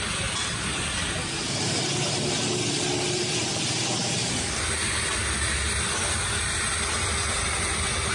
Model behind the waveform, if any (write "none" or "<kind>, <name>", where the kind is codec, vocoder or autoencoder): none